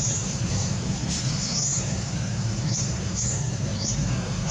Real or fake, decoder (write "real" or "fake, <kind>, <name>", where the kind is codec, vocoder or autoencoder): fake, codec, SNAC